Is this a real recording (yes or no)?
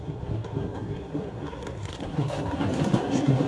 no